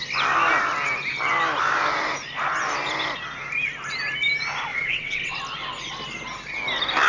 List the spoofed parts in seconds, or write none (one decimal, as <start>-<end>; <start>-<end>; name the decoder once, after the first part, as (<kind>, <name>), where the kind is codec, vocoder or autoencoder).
4.7-5.4 (vocoder, WaveNeXt)